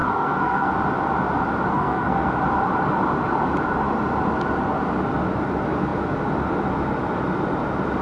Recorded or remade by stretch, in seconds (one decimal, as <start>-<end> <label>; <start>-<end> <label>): 0.0-0.7 remade; 0.7-1.7 recorded; 1.7-2.3 remade; 2.3-8.0 recorded